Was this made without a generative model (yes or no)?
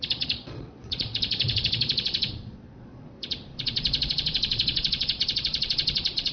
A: no